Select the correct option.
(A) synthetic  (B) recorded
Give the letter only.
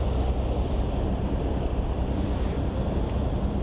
A